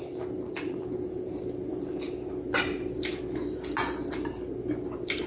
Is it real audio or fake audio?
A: real